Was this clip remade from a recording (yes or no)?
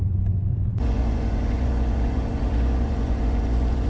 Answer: yes